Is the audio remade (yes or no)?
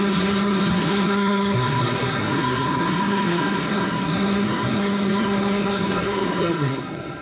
yes